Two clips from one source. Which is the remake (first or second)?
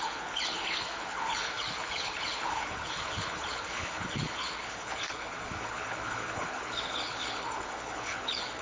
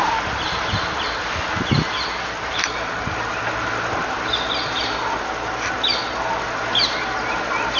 first